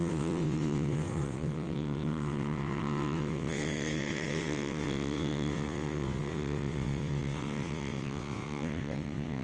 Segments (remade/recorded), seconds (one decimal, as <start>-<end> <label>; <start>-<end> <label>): 0.0-9.4 remade